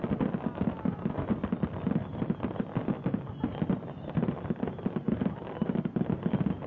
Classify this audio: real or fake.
real